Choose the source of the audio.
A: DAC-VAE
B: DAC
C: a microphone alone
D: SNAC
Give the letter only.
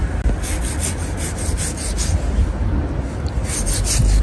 C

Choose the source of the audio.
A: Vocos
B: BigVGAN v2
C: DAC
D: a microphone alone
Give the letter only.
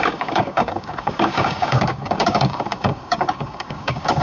C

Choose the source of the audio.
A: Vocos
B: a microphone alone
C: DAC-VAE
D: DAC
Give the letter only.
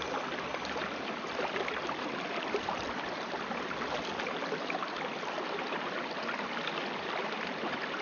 B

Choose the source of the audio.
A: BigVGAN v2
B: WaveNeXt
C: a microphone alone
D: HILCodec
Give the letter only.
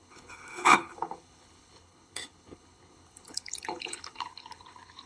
D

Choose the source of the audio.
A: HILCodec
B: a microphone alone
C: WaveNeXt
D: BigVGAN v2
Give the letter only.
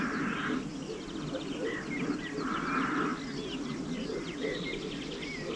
B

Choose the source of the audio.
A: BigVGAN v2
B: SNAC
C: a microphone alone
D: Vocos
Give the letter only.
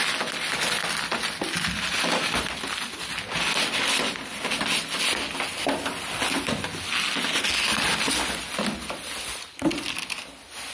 C